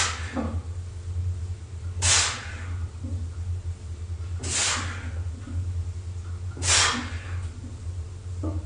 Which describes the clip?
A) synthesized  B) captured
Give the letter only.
B